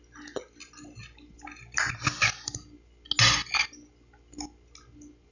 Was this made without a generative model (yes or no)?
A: yes